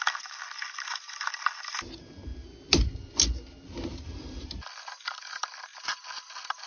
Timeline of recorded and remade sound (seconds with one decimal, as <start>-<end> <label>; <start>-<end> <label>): 0.0-6.7 recorded